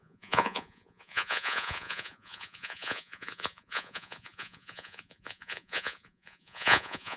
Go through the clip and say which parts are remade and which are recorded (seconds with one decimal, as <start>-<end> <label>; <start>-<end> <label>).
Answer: 0.0-7.2 remade